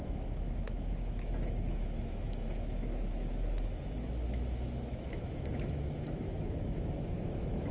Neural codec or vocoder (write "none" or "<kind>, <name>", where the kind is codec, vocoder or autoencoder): autoencoder, DAC-VAE